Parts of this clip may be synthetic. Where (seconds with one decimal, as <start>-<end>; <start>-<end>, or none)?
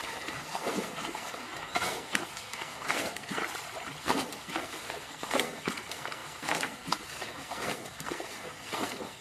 0.0-3.4; 4.0-9.2